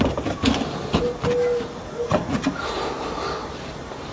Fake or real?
real